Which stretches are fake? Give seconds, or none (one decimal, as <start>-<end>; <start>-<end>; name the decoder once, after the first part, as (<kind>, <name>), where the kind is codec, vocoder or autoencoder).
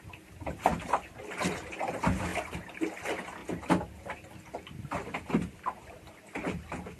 0.0-0.7 (vocoder, BigVGAN v2); 1.3-2.3; 2.9-3.4; 5.3-7.0